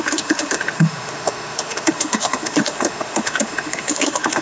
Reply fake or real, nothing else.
fake